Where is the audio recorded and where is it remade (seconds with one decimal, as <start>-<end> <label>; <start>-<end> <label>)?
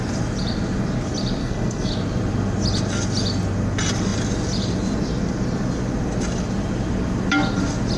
0.0-1.4 recorded; 1.4-1.9 remade; 1.9-8.0 recorded